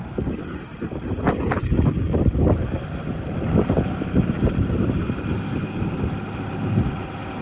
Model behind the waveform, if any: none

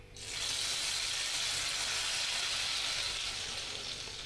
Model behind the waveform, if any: none